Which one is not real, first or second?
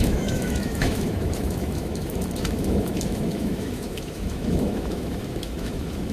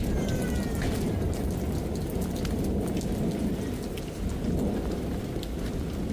first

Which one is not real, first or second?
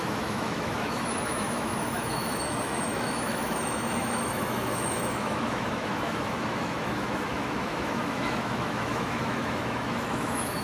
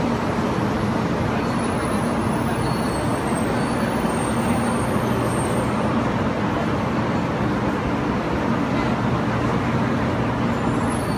first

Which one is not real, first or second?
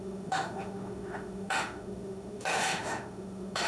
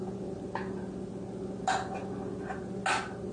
first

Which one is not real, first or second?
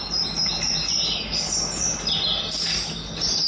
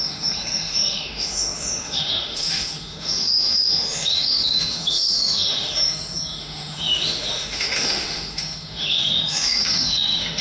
second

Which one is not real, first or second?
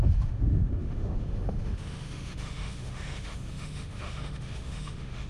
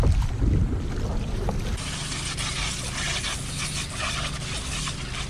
first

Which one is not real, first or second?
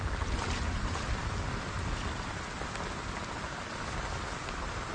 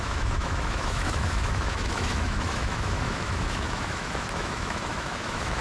second